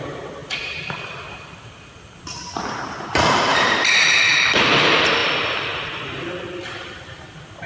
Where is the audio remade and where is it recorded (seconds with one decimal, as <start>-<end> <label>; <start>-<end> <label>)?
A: 0.0-0.4 recorded; 0.4-2.6 remade; 2.6-3.5 recorded; 3.5-4.1 remade; 4.1-5.2 recorded; 5.2-7.7 remade